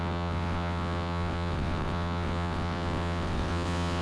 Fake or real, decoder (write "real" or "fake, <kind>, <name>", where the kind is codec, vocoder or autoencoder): fake, vocoder, WaveNeXt